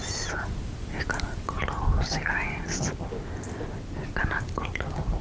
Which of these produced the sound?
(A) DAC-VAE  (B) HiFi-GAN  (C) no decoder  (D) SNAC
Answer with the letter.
C